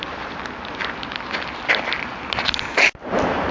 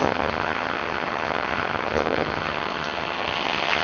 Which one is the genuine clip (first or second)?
first